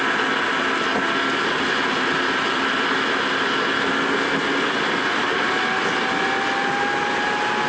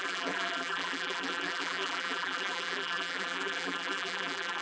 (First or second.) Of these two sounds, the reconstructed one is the second